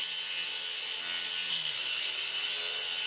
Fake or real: real